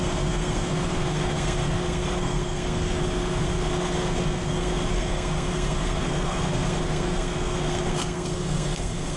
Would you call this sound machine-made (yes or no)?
yes